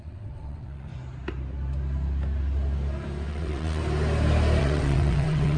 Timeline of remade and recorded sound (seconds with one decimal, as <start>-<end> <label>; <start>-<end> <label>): 0.0-0.9 remade; 0.9-3.3 recorded; 3.3-3.8 remade; 3.8-4.6 recorded; 4.6-5.6 remade